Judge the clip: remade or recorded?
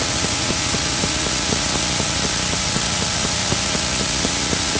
remade